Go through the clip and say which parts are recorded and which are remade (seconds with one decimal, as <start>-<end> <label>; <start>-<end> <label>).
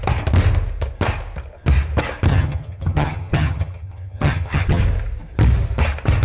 0.0-2.3 recorded; 2.3-4.8 remade; 4.8-6.2 recorded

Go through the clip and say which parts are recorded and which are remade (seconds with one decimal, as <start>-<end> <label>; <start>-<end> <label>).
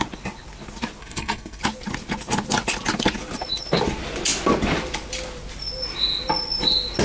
0.0-1.0 recorded; 1.0-1.6 remade; 1.6-7.0 recorded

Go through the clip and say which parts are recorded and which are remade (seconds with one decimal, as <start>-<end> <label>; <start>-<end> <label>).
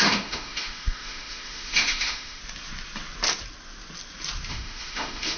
0.0-2.4 remade; 2.4-4.5 recorded; 4.5-5.4 remade